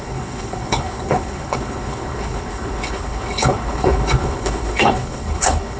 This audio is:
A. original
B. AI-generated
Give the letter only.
B